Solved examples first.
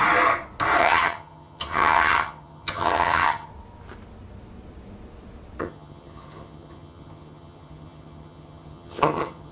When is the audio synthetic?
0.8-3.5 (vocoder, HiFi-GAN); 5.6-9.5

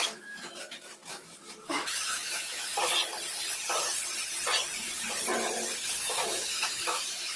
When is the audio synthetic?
0.0-2.7 (autoencoder, DAC-VAE); 5.9-7.4

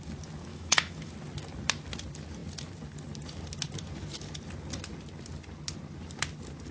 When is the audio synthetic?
0.5-1.1 (autoencoder, DAC-VAE)

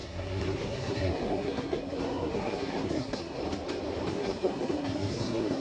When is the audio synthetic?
0.0-3.4 (codec, SNAC); 4.1-5.6

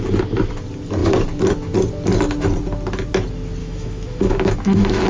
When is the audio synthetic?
3.6-5.1 (autoencoder, DAC-VAE)

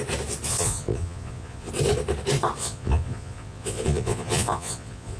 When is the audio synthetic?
0.5-1.7 (vocoder, Vocos); 2.6-5.2